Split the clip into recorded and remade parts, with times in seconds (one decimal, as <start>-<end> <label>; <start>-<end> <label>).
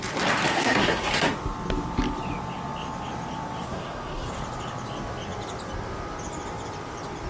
0.0-0.5 recorded; 0.5-1.1 remade; 1.1-3.7 recorded; 3.7-4.3 remade; 4.3-7.3 recorded